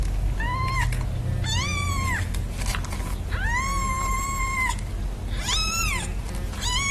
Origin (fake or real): real